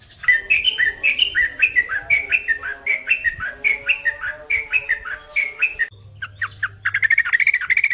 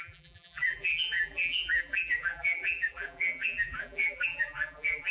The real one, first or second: first